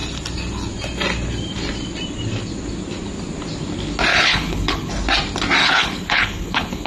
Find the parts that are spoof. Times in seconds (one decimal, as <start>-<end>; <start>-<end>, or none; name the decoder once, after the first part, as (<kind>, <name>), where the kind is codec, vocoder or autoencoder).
4.1-4.9 (codec, HILCodec); 5.6-6.9

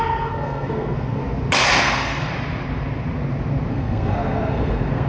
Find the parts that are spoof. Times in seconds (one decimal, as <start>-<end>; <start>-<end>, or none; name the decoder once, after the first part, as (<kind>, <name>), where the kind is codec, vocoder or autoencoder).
0.0-1.2 (codec, SNAC); 1.8-2.3; 3.7-5.1

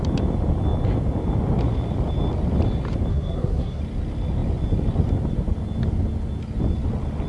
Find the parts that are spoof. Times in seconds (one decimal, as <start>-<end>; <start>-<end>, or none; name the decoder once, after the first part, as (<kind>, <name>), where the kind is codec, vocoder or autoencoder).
3.1-3.8 (codec, SNAC)

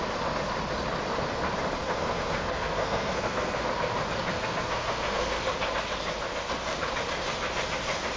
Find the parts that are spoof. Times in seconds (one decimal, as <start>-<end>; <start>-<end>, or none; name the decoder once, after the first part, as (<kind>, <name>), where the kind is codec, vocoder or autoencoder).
1.8-3.7 (codec, SNAC); 4.3-5.4

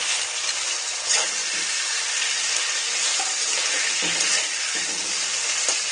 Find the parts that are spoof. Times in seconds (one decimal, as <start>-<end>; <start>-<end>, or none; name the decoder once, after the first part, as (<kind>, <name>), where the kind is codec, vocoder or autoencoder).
none